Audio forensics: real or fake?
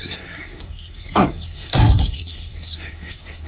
fake